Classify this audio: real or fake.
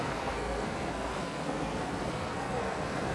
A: fake